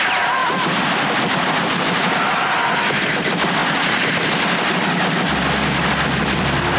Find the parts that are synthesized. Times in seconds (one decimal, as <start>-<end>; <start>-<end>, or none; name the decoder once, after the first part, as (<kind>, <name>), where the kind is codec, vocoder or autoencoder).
none